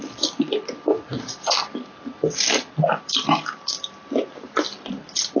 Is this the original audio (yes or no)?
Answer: no